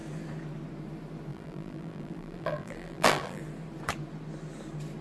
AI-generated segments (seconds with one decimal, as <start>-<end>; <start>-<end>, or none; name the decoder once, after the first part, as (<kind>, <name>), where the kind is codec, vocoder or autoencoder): 1.3-3.4 (vocoder, BigVGAN v2)